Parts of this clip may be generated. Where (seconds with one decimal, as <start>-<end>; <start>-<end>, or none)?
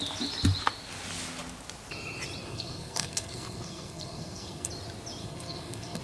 2.4-4.7; 5.2-6.0